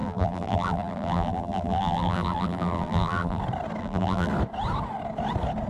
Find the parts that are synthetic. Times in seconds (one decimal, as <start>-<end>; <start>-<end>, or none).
0.0-3.4; 3.8-4.3